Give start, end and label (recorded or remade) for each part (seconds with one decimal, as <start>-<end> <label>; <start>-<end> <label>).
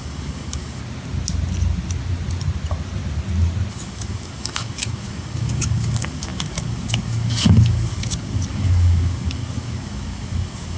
0.0-0.8 remade; 0.8-3.7 recorded; 3.7-10.8 remade